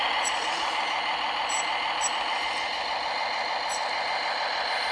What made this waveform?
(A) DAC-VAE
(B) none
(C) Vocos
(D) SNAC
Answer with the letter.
B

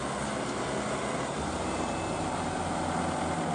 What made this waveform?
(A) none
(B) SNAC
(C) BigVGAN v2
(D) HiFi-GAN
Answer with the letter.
A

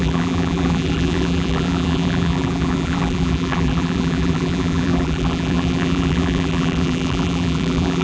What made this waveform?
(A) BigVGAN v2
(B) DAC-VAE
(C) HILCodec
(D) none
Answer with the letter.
A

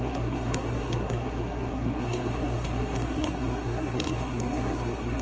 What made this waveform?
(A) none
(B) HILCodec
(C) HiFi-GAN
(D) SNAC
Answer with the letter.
D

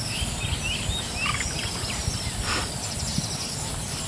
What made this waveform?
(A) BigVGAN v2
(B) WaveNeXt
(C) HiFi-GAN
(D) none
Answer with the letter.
A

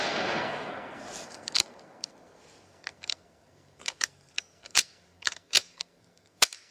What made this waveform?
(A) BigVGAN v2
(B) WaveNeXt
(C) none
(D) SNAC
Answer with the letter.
D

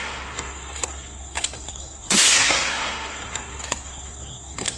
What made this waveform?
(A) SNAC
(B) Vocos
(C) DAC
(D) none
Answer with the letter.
A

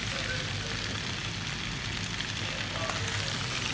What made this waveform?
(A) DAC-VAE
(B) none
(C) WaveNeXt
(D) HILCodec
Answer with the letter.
B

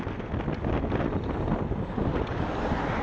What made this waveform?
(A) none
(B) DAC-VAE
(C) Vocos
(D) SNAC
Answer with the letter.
A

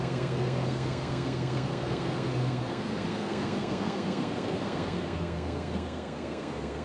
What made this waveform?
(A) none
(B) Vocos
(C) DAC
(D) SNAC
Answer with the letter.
D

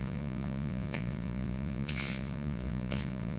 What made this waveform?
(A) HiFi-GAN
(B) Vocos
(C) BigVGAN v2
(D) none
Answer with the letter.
B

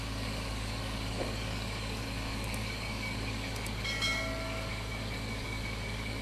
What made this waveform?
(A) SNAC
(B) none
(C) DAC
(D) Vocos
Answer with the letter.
C